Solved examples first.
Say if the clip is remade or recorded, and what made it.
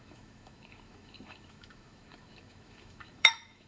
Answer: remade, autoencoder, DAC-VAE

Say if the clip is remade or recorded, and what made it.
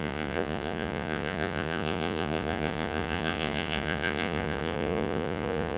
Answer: remade, vocoder, Vocos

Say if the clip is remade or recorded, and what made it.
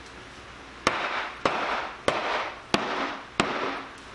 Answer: recorded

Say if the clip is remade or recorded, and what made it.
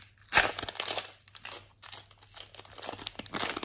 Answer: recorded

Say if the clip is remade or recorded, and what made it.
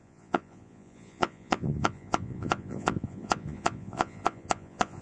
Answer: remade, vocoder, Vocos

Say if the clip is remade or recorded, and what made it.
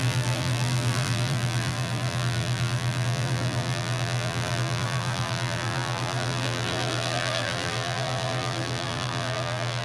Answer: remade, vocoder, BigVGAN v2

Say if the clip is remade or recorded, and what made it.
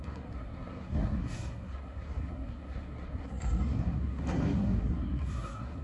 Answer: remade, codec, SNAC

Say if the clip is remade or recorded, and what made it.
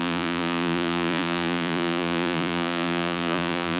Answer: remade, vocoder, Vocos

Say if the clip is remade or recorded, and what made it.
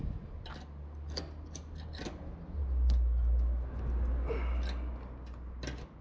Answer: recorded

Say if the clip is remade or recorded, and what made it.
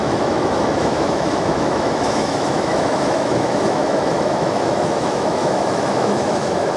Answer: remade, autoencoder, DAC-VAE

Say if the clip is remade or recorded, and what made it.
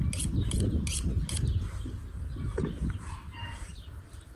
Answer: recorded